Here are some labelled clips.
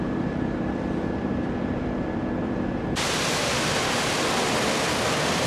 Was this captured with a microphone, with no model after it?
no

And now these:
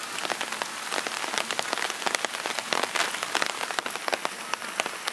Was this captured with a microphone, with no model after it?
yes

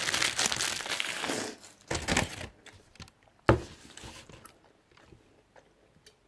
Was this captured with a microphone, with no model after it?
yes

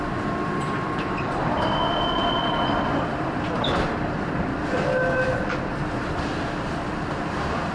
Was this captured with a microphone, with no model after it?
no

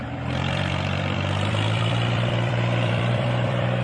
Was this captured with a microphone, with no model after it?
no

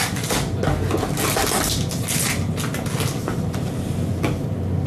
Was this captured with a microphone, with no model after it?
yes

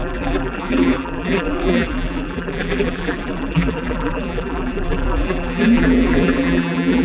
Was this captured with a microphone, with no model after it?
no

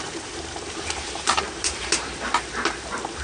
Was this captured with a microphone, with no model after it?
no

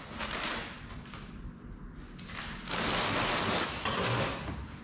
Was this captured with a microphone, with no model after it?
yes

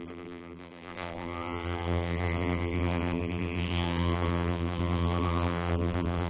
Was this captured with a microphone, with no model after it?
no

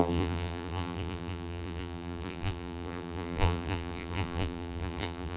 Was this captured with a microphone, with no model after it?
no